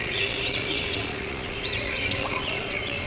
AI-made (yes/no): yes